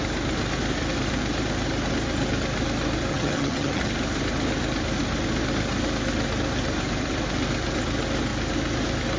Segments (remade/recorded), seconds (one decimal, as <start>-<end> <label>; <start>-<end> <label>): 0.0-3.1 recorded; 3.1-3.9 remade; 3.9-9.2 recorded